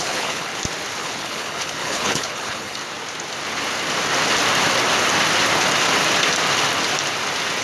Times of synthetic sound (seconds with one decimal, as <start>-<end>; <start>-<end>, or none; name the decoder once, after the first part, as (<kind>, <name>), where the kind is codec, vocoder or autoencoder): 0.0-0.5 (codec, HILCodec); 1.0-2.8